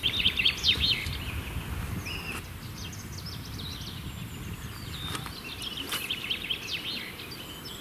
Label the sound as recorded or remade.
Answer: recorded